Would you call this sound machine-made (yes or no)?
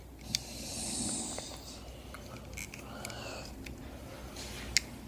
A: no